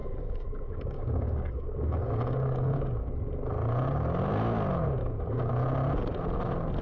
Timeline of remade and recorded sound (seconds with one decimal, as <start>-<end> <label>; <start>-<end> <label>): 0.0-3.1 remade; 3.1-5.0 recorded; 5.0-5.5 remade; 5.5-6.8 recorded